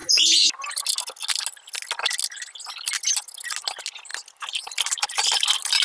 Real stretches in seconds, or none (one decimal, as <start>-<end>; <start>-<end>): 0.0-5.8